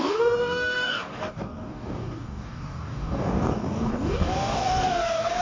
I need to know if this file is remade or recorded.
remade